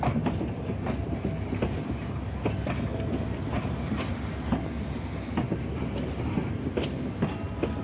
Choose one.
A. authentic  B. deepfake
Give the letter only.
A